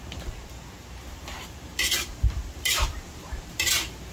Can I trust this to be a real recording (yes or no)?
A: no